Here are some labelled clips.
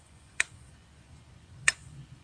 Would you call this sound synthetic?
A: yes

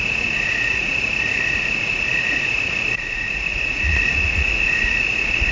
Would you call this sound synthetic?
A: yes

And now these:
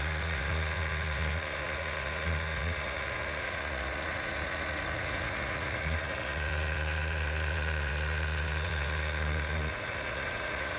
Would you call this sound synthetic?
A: yes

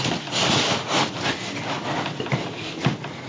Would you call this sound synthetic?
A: no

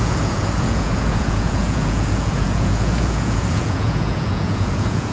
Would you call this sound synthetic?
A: yes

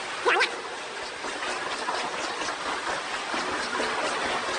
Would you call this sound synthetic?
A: no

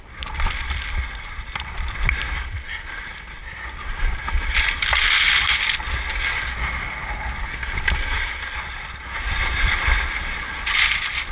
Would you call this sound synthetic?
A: no